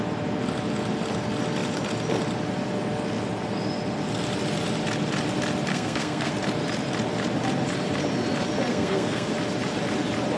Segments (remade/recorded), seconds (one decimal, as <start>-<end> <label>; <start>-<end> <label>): 0.0-5.7 recorded; 5.7-6.3 remade; 6.3-8.7 recorded; 8.7-9.3 remade; 9.3-10.4 recorded